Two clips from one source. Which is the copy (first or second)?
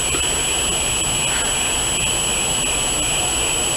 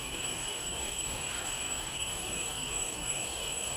second